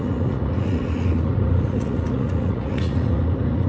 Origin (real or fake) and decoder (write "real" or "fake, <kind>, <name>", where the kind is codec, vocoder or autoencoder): fake, vocoder, Vocos